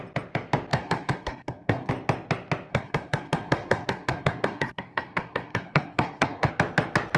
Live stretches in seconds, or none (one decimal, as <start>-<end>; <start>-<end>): 0.0-0.7; 1.9-2.7; 6.5-7.2